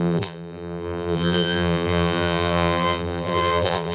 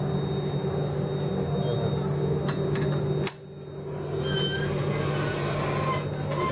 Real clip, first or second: second